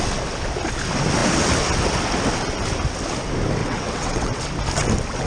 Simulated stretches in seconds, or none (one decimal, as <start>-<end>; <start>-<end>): 3.6-4.4

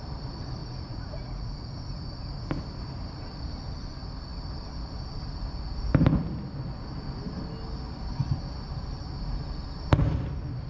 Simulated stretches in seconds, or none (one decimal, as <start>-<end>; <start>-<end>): 0.6-1.5

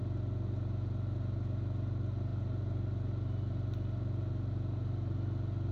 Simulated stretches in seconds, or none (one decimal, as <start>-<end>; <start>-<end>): none

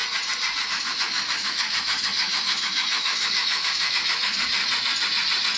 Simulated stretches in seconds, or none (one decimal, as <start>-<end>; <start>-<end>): 0.7-4.6

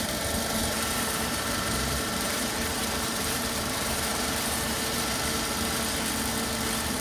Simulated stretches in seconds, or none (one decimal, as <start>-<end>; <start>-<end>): 0.6-4.8

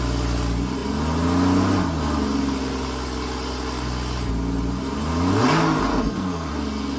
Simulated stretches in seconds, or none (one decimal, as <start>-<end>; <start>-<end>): 5.9-6.5